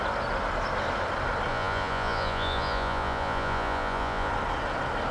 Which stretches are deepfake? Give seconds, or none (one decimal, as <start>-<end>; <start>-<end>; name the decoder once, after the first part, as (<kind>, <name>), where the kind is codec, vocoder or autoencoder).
1.5-4.3 (vocoder, Vocos)